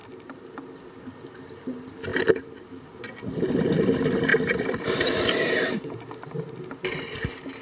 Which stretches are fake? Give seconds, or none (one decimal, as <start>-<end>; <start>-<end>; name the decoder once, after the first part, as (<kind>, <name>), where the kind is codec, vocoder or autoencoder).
2.1-3.0 (vocoder, BigVGAN v2); 4.3-6.1